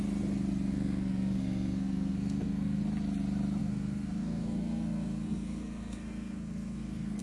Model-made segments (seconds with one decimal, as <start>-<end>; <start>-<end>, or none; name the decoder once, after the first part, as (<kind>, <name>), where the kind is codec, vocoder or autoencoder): 0.7-2.8 (codec, SNAC); 3.6-7.2